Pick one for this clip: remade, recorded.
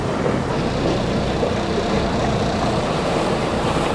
remade